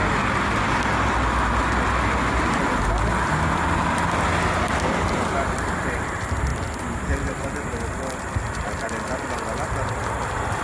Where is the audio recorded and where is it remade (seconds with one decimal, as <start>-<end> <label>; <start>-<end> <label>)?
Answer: 0.0-10.6 recorded